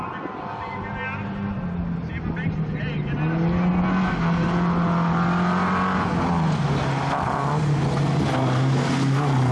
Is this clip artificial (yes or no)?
no